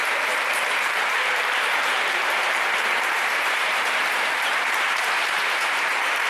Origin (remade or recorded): remade